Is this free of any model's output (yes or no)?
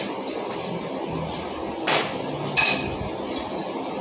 yes